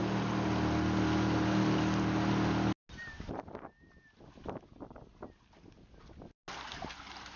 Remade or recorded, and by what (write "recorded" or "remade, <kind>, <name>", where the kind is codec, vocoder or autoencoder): recorded